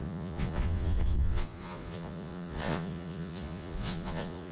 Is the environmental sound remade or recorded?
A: remade